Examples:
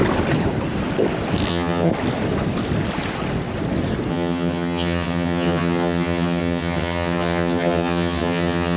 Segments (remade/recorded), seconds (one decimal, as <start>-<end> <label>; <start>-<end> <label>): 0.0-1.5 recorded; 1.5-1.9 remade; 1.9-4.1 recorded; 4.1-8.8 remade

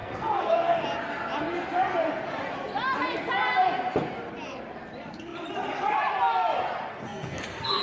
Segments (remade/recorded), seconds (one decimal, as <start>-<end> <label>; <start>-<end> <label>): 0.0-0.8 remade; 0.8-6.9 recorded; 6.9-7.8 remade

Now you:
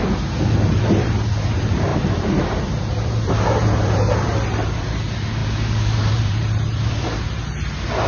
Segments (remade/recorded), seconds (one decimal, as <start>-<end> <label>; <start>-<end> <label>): 0.0-8.1 remade

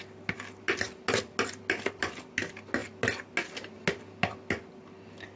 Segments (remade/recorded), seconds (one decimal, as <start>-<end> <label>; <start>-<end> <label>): 0.0-5.4 recorded

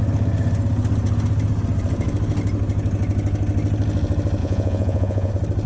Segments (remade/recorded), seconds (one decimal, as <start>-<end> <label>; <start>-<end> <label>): 0.0-4.4 recorded; 4.4-5.3 remade; 5.3-5.7 recorded